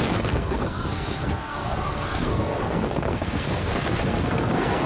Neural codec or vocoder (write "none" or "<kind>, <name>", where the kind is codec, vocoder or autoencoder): codec, SNAC